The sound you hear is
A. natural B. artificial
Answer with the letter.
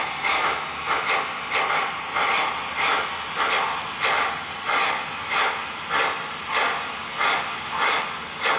A